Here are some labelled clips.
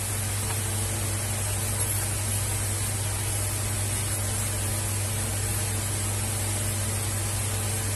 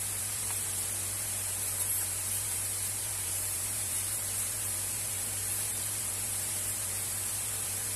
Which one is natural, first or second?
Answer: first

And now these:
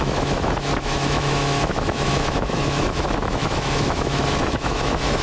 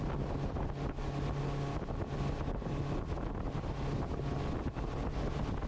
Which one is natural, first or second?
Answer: second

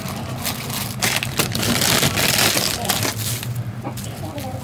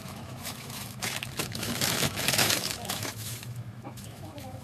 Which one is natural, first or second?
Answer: first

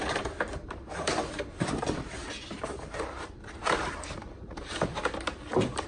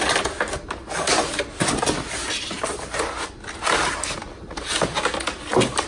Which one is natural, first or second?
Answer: second